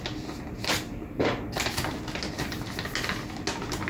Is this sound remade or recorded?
recorded